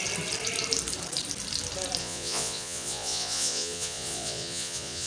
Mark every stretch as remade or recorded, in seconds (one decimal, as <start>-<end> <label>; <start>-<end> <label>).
0.0-2.0 recorded; 2.0-5.1 remade